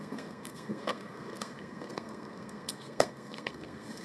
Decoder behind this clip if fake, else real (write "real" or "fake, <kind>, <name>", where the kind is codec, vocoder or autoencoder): fake, codec, SNAC